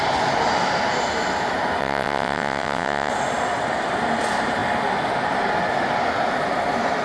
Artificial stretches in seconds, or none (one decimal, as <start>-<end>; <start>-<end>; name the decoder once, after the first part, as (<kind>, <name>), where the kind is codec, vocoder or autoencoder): 1.8-3.1 (vocoder, WaveNeXt)